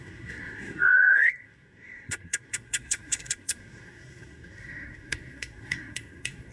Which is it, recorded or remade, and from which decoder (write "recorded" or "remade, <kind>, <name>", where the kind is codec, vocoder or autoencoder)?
remade, codec, SNAC